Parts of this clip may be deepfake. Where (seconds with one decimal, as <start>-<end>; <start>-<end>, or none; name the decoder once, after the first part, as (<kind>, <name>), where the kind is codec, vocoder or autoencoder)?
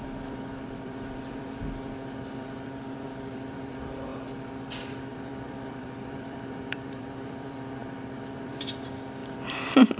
0.0-4.1 (vocoder, BigVGAN v2); 5.1-10.0